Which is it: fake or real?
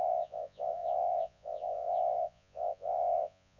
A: fake